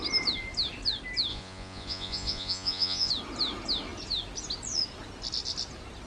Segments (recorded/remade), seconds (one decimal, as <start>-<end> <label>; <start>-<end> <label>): 0.0-1.3 recorded; 1.3-3.1 remade; 3.1-6.1 recorded